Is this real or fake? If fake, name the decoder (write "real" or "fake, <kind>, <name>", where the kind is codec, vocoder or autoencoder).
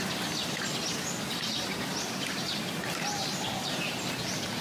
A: real